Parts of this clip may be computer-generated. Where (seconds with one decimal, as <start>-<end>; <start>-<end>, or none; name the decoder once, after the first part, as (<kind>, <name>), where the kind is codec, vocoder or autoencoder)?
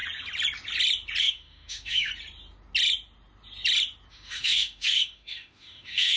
1.2-2.1 (autoencoder, DAC-VAE); 4.1-6.2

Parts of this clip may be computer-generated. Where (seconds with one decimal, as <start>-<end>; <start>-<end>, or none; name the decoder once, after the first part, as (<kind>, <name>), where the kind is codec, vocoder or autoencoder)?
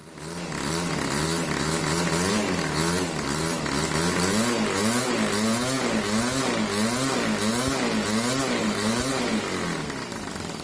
8.6-9.4 (vocoder, BigVGAN v2)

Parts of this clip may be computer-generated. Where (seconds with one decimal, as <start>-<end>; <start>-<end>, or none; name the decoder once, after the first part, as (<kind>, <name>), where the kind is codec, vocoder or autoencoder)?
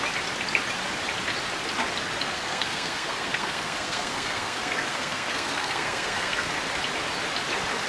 2.3-6.5 (codec, SNAC)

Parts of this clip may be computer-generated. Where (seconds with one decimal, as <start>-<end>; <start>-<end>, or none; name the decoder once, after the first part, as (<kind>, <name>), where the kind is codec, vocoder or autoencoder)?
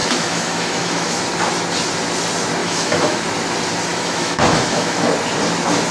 0.0-1.2 (autoencoder, DAC-VAE); 2.6-3.2; 3.9-5.1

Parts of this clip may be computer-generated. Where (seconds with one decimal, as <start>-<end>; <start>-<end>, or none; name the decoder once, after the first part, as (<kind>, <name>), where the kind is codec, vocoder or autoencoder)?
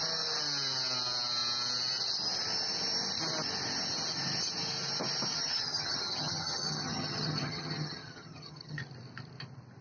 5.3-8.8 (vocoder, HiFi-GAN)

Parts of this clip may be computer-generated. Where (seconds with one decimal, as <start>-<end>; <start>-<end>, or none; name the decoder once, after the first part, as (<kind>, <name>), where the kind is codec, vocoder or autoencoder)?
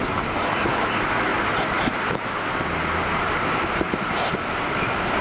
1.3-4.4 (vocoder, BigVGAN v2)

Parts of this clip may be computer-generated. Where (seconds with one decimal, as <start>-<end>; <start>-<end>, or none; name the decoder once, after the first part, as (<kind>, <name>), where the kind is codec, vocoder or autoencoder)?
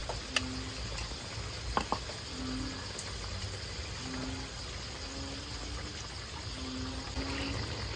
none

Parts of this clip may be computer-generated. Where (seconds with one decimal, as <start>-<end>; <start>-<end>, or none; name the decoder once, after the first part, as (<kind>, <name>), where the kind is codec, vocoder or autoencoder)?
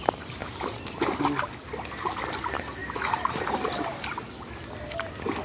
0.4-1.5 (vocoder, BigVGAN v2); 2.8-3.9